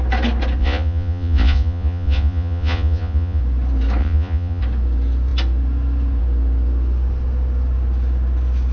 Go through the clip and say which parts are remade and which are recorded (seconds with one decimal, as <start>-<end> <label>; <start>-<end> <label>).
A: 0.0-0.6 recorded; 0.6-3.4 remade; 3.4-4.0 recorded; 4.0-4.6 remade; 4.6-8.7 recorded